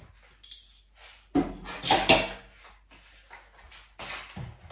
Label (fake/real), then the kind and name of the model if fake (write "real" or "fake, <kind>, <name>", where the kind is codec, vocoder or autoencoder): real